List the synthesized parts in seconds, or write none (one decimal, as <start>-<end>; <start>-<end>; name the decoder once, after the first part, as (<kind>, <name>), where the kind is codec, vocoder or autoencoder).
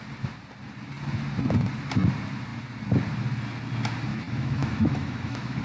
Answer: 4.1-5.6 (autoencoder, DAC-VAE)